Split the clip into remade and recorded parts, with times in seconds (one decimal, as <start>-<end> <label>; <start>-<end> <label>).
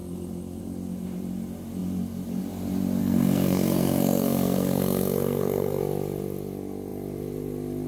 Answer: 0.0-3.0 recorded; 3.0-5.8 remade; 5.8-7.9 recorded